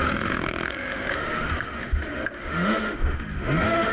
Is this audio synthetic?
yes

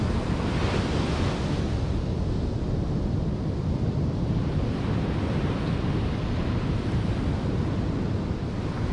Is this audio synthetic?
no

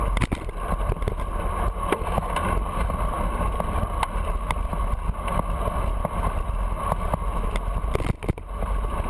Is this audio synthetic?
no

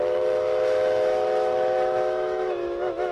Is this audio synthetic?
yes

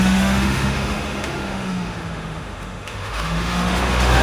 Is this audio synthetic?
yes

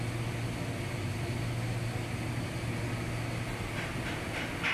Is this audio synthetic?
no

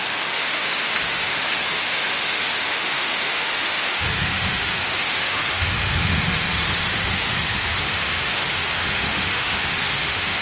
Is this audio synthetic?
yes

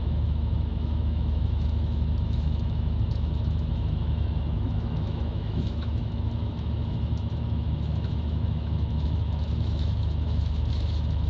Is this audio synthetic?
yes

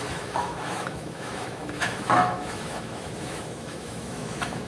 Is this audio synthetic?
yes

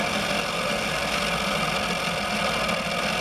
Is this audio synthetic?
no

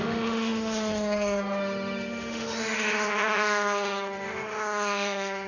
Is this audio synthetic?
yes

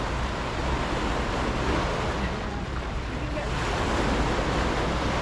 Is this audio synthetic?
no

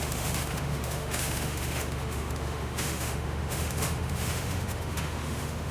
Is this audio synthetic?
yes